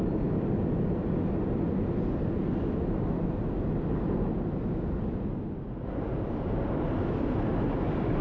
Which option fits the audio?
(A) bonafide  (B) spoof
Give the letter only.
A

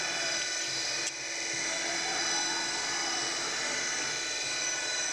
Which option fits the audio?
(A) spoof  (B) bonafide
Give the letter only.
B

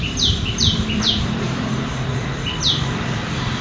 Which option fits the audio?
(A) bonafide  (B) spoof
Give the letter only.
B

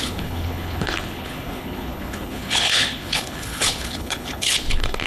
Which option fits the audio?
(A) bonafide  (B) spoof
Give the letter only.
B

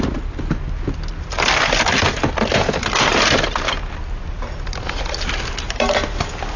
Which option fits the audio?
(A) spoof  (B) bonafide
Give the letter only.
B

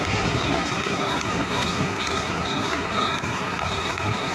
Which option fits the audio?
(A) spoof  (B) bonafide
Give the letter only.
A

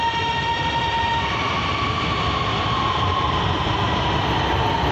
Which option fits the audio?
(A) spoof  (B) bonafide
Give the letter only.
B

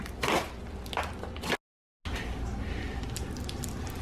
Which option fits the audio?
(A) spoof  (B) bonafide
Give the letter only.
B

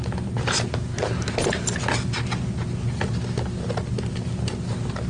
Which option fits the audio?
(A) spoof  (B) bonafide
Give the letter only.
B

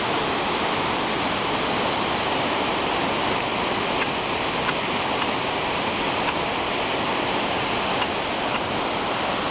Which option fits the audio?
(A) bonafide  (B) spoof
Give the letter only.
A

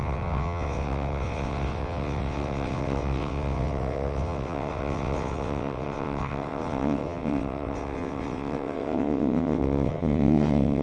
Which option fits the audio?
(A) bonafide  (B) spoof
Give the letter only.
B